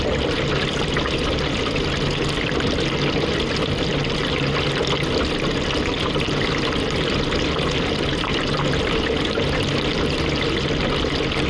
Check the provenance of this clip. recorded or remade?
recorded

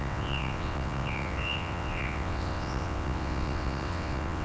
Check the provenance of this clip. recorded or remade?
remade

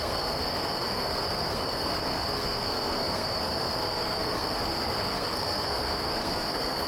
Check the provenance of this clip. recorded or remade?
remade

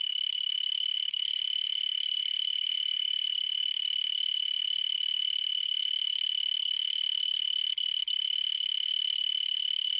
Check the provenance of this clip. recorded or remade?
remade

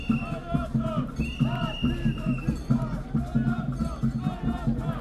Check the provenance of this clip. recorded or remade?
recorded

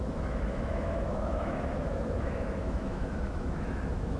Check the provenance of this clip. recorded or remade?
remade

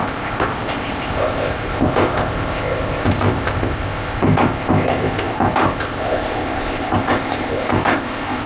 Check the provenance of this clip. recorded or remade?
remade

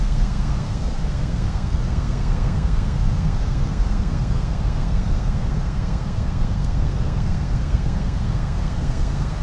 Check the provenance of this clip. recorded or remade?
remade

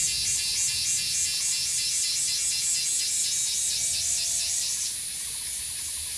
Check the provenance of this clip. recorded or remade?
recorded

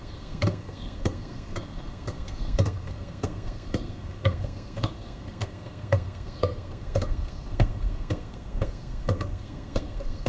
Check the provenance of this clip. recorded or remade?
remade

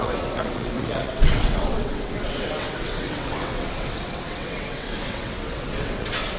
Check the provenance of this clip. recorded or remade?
remade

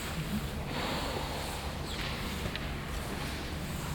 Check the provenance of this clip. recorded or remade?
recorded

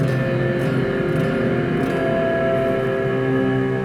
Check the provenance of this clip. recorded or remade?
recorded